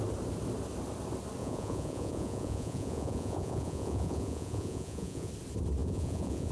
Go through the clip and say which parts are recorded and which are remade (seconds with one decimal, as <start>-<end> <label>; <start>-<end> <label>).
0.0-1.4 recorded; 1.4-5.3 remade; 5.3-5.8 recorded; 5.8-6.5 remade